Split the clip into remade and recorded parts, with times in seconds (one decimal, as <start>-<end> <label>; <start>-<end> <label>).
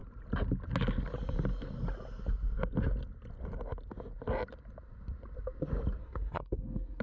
0.0-6.0 recorded; 6.0-7.0 remade